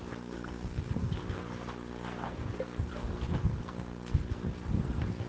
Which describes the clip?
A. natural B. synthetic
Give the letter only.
B